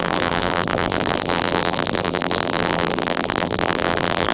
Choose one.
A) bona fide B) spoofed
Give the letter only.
B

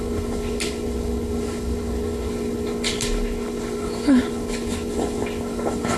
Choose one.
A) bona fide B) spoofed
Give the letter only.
B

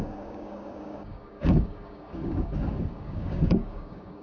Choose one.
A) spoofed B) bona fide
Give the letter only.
A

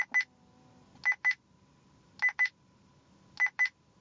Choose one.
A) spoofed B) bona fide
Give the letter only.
B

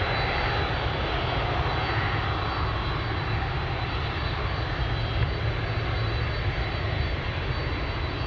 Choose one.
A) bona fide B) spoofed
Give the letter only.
A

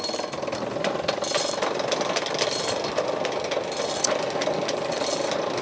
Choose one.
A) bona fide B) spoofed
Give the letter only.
A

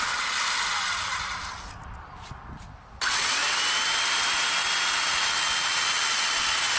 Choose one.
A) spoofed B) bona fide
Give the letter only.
B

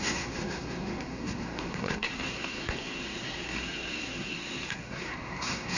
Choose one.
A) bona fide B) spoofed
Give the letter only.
B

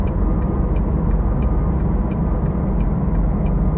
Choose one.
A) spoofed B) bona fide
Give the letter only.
B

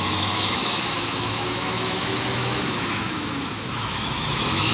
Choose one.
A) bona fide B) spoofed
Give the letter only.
B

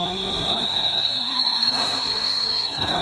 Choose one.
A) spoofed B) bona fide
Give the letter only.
A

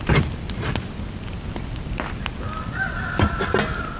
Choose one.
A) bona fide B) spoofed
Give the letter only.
A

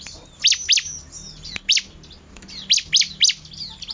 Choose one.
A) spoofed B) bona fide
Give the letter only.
B